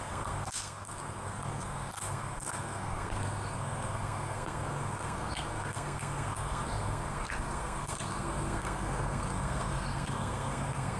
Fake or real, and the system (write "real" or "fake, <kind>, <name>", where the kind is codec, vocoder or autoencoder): fake, codec, SNAC